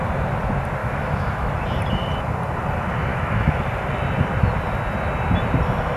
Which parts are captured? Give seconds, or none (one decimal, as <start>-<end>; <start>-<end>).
0.0-0.8; 1.5-3.1; 3.6-6.0